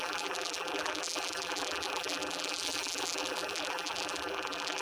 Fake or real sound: fake